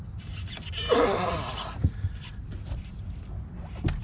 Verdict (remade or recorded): recorded